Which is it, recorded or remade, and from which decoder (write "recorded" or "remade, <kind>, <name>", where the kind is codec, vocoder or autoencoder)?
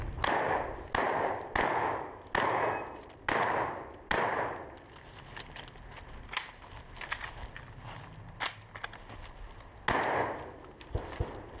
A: recorded